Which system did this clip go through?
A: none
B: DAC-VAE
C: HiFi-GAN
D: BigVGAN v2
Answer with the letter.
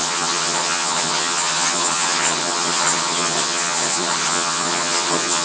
C